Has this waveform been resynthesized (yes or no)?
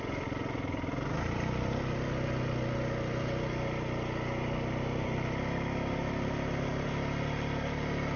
no